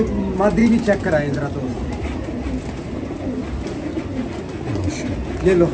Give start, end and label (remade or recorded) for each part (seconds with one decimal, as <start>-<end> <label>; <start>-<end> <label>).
0.0-5.7 recorded